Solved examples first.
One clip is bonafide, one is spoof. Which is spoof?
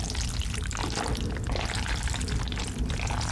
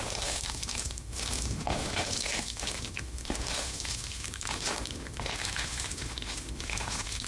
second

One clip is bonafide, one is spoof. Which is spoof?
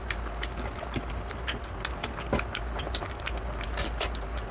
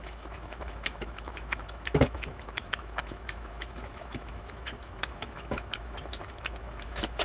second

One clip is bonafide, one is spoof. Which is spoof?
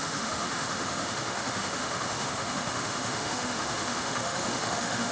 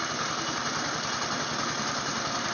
first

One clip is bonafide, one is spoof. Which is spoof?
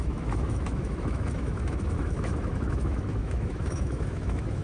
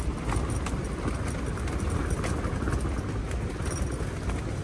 first